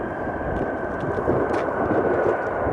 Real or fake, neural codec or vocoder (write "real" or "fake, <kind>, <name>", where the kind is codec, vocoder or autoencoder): real